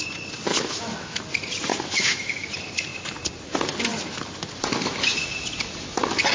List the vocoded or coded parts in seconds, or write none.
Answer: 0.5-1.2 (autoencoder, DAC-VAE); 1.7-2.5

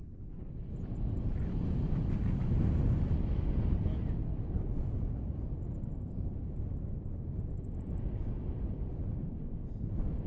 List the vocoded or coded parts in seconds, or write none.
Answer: none

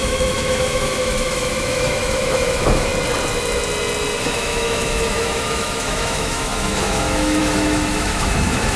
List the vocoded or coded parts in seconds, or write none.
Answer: 0.0-2.9 (autoencoder, DAC-VAE); 4.2-8.8

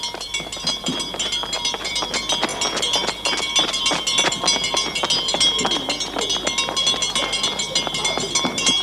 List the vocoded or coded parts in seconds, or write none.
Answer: none